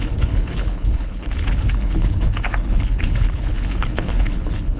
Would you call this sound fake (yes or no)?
yes